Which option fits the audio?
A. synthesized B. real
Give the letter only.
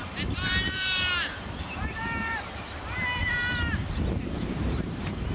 A